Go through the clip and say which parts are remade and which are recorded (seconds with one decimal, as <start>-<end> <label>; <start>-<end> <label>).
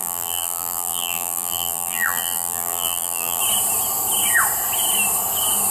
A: 0.0-3.4 remade; 3.4-5.7 recorded